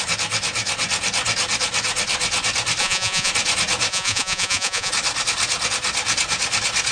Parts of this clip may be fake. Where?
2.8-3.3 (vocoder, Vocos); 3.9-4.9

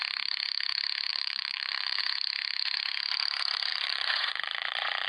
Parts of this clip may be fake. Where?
1.1-2.0 (vocoder, Vocos); 3.7-5.1

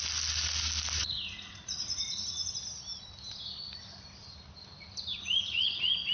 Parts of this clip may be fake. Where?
1.0-2.5 (vocoder, Vocos); 5.1-6.1

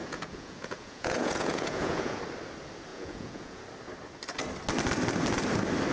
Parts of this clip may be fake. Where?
0.0-2.2 (vocoder, Vocos); 2.9-3.6

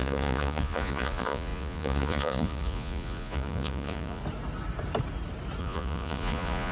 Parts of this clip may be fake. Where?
0.0-4.2 (vocoder, Vocos); 5.6-6.7